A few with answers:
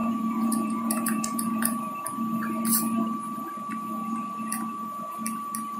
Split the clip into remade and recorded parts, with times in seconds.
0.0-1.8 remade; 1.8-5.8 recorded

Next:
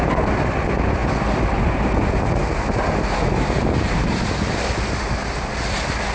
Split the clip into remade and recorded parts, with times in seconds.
0.0-6.1 recorded

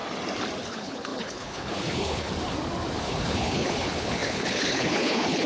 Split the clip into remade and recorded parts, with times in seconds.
0.0-0.6 recorded; 0.6-2.3 remade; 2.3-3.0 recorded; 3.0-5.5 remade